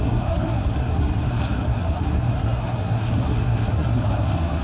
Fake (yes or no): yes